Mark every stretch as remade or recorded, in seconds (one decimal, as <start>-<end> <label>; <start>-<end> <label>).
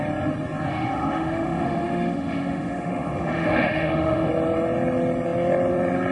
0.0-0.7 recorded; 0.7-4.3 remade; 4.3-6.1 recorded